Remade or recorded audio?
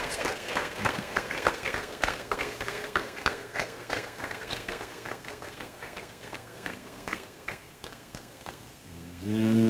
remade